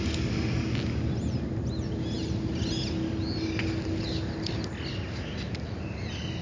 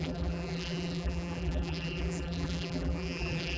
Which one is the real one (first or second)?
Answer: first